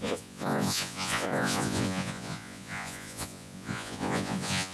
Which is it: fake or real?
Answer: fake